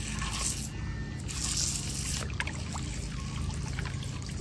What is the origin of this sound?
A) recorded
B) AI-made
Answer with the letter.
A